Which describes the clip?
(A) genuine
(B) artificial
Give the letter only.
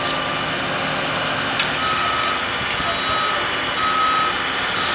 A